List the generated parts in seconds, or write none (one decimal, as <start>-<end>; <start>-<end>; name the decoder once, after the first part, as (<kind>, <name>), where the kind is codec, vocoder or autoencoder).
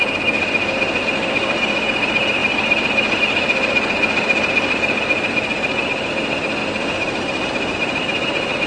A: 1.2-1.9 (vocoder, BigVGAN v2); 2.4-3.2; 6.6-8.7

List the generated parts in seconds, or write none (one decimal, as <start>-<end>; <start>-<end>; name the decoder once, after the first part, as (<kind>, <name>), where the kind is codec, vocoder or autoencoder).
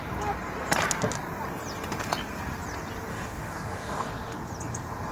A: 3.1-4.1 (codec, DAC)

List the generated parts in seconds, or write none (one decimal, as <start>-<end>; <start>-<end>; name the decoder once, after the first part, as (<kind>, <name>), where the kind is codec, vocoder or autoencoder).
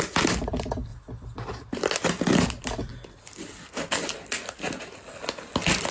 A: none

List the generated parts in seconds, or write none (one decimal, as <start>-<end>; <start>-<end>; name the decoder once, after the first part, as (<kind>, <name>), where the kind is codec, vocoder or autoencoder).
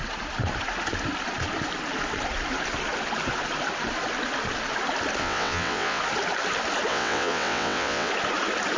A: 5.2-6.0 (vocoder, WaveNeXt); 6.9-8.1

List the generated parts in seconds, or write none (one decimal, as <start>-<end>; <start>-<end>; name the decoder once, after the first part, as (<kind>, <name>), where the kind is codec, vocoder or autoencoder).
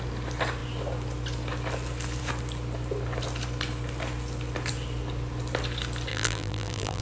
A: 6.1-7.0 (vocoder, BigVGAN v2)